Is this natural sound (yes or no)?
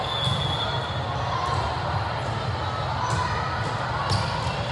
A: yes